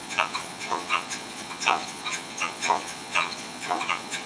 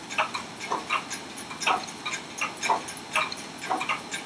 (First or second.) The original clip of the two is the second